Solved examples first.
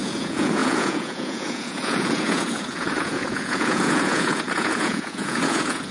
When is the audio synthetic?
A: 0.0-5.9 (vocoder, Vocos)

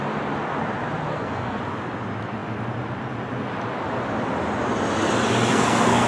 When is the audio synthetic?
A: 1.1-1.6 (codec, SNAC); 5.5-6.1

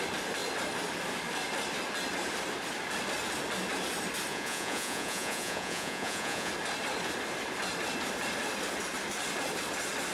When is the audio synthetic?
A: 4.3-6.5 (vocoder, Vocos)

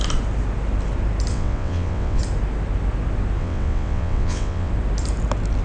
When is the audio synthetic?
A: 1.3-2.2 (vocoder, WaveNeXt); 3.4-4.7

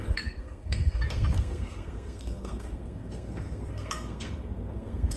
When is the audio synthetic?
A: 0.0-5.2 (codec, SNAC)

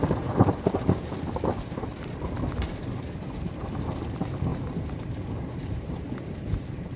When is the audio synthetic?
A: 0.0-1.9 (vocoder, BigVGAN v2); 2.7-4.5; 5.2-7.0